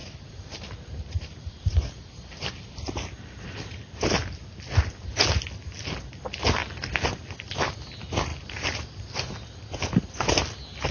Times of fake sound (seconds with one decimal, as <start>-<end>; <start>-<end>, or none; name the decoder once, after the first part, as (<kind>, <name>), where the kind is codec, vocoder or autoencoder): 0.0-2.5 (vocoder, BigVGAN v2); 6.6-7.1